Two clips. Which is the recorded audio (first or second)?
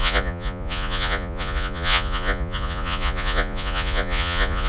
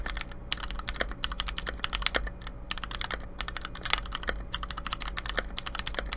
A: second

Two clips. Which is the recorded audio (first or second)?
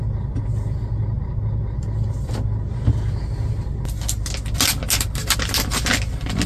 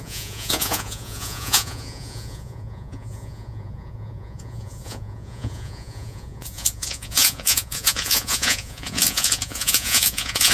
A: first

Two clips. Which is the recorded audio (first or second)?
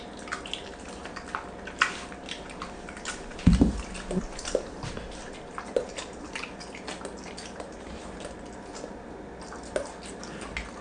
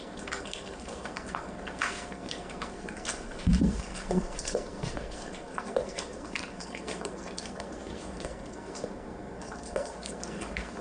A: first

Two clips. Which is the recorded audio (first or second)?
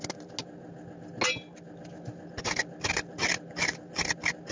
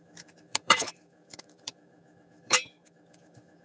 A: first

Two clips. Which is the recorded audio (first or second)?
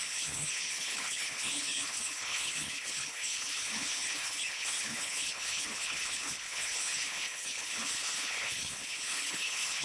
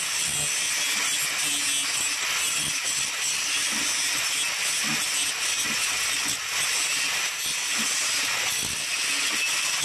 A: second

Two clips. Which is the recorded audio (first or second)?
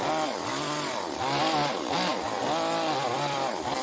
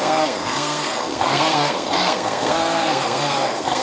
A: first